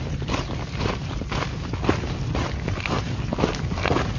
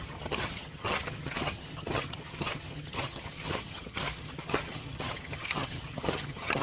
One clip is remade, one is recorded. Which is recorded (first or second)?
first